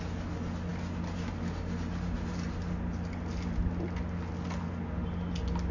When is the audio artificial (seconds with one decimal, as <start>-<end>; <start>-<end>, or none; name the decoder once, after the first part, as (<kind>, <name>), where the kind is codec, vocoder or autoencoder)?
none